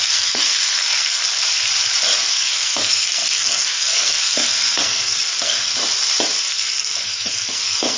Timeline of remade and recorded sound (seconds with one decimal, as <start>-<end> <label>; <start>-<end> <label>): 0.0-1.2 remade; 1.2-2.3 recorded; 2.3-5.7 remade; 5.7-6.4 recorded; 6.4-8.0 remade